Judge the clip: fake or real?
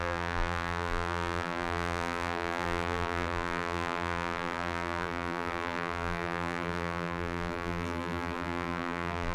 fake